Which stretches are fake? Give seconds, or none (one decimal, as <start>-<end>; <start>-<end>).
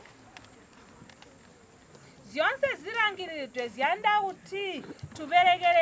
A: none